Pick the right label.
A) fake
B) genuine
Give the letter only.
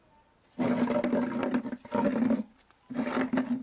B